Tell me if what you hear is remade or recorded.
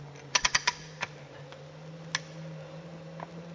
recorded